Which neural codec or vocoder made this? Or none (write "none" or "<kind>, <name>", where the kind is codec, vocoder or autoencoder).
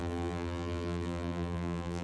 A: vocoder, BigVGAN v2